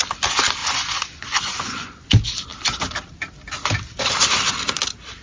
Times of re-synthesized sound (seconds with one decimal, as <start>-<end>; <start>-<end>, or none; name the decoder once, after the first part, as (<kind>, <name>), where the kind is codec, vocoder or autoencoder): 0.6-2.1 (vocoder, Vocos)